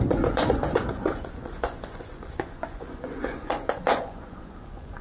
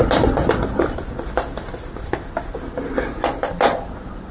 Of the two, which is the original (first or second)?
second